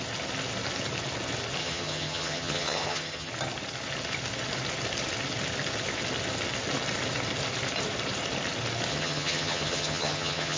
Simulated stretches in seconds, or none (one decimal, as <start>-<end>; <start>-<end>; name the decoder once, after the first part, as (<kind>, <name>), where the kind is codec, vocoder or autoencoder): 1.6-3.3 (vocoder, HiFi-GAN); 8.9-10.6